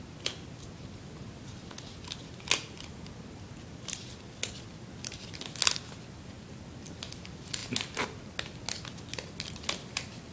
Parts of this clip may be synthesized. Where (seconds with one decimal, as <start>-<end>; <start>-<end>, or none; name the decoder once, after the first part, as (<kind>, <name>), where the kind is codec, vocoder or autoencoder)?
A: none

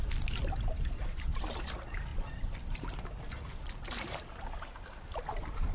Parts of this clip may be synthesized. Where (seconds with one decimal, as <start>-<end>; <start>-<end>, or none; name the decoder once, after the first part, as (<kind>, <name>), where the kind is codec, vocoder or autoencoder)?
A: none

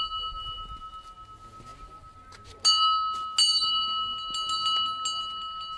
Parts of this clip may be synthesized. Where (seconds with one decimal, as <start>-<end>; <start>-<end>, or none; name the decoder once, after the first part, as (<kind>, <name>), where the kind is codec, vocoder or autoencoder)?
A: none

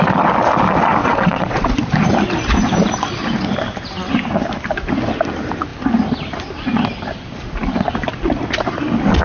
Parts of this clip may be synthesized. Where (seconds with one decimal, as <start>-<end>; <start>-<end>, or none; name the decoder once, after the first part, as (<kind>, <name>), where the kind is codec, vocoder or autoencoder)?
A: 1.0-1.7 (vocoder, WaveNeXt)

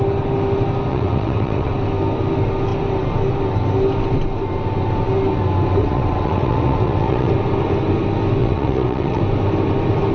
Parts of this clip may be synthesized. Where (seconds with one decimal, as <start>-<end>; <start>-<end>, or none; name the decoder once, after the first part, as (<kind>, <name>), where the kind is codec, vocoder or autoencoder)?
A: 0.9-1.7 (vocoder, WaveNeXt); 5.8-7.3; 8.4-9.2

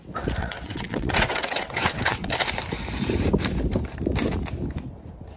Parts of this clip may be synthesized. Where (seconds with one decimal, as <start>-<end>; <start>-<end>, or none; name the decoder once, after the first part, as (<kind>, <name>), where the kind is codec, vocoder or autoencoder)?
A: 0.4-2.3 (vocoder, WaveNeXt)